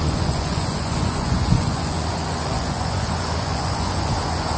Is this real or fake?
fake